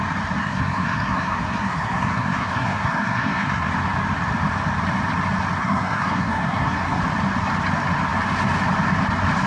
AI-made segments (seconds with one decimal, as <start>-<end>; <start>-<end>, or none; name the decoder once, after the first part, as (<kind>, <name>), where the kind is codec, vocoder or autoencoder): 0.4-3.7 (codec, SNAC); 5.6-7.0